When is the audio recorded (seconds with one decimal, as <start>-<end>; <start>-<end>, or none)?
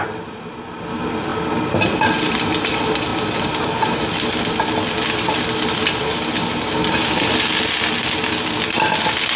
0.0-9.4